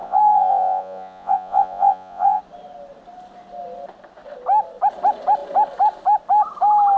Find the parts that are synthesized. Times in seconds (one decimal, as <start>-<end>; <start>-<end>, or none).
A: 0.0-2.4